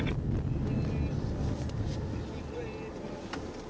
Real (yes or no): yes